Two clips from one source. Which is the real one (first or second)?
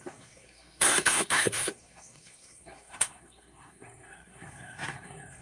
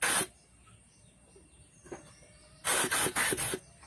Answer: second